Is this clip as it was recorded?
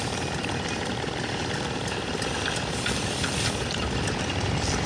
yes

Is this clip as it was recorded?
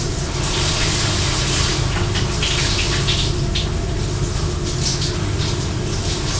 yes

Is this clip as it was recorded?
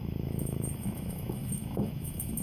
no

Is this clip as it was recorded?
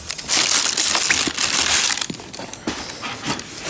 yes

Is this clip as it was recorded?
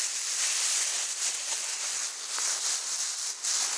yes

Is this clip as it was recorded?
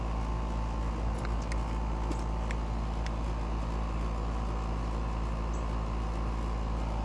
yes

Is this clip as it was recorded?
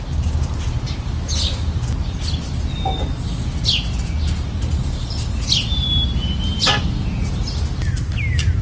yes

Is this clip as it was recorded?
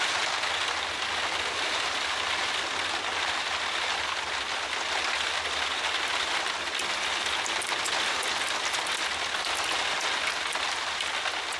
yes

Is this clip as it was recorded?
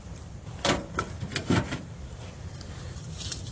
yes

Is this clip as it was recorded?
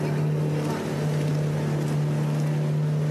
yes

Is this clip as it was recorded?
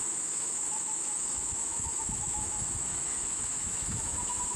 no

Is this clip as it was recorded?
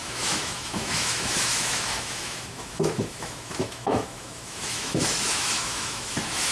no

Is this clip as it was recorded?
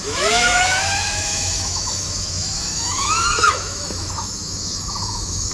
no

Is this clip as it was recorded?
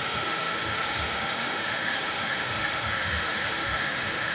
no